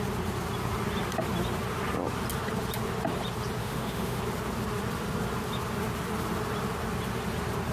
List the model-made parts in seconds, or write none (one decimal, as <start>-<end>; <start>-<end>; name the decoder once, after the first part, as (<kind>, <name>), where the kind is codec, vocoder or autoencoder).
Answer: 3.6-4.2 (autoencoder, DAC-VAE)

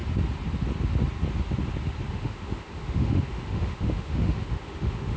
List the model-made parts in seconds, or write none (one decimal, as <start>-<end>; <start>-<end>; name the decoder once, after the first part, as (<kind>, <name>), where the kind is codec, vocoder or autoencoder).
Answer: 2.1-5.2 (autoencoder, DAC-VAE)

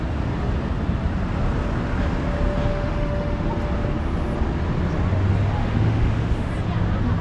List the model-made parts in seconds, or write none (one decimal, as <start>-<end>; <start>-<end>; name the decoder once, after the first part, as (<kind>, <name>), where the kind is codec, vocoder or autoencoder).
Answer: 2.7-3.5 (autoencoder, DAC-VAE); 5.6-6.5